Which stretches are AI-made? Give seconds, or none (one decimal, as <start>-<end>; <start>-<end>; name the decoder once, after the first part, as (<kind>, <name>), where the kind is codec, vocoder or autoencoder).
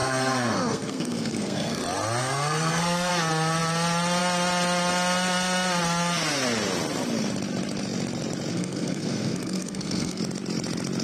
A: 0.0-1.8 (codec, SNAC); 2.2-3.1; 8.5-10.2